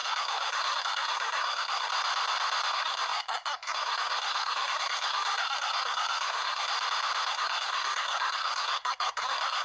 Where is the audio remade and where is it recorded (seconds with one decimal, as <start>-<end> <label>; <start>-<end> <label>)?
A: 0.0-1.9 remade; 1.9-2.7 recorded; 2.7-6.7 remade; 6.7-7.3 recorded; 7.3-9.6 remade